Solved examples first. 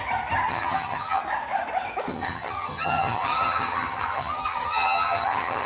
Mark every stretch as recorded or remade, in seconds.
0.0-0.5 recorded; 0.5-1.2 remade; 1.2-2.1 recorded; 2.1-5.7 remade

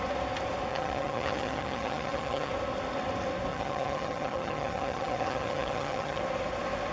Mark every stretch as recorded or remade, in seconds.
0.0-0.7 recorded; 0.7-2.5 remade; 2.5-3.5 recorded; 3.5-6.2 remade; 6.2-6.9 recorded

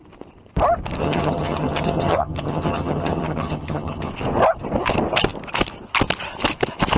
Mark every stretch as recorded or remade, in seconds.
0.0-1.0 recorded; 1.0-4.1 remade; 4.1-7.0 recorded

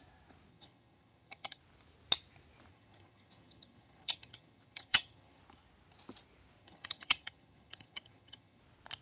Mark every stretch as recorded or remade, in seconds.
0.0-0.5 recorded; 0.5-1.6 remade; 1.6-2.7 recorded; 2.7-5.4 remade; 5.4-6.6 recorded; 6.6-8.6 remade; 8.6-9.0 recorded

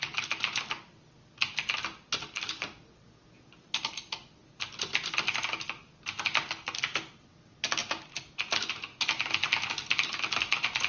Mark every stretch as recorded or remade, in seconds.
0.0-10.9 recorded